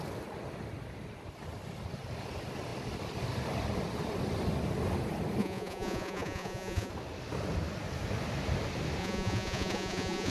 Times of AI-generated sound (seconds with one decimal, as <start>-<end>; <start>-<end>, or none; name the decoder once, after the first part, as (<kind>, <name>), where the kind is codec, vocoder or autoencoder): 5.4-6.9 (vocoder, Vocos); 9.0-10.3